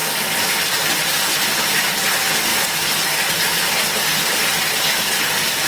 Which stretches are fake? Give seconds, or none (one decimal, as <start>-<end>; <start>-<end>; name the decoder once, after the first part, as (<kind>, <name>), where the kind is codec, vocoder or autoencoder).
none